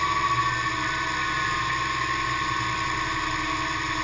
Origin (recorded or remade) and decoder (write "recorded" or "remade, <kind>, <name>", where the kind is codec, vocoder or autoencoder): recorded